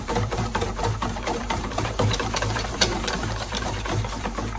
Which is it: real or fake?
fake